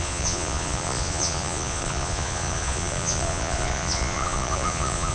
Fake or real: fake